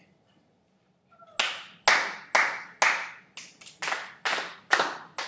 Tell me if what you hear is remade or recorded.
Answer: recorded